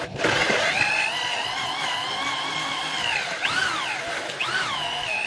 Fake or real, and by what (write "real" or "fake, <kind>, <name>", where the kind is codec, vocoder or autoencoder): real